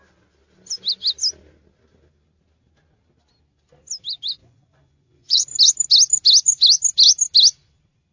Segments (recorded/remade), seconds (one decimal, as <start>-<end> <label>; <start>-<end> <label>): 0.0-4.4 recorded; 4.4-5.6 remade; 5.6-8.1 recorded